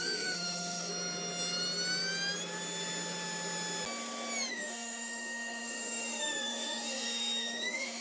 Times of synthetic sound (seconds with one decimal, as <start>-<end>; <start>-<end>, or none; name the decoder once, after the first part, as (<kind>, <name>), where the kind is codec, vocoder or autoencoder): 0.0-0.9 (autoencoder, DAC-VAE); 4.5-8.0